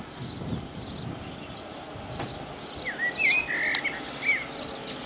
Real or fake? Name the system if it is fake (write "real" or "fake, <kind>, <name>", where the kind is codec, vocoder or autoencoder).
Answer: real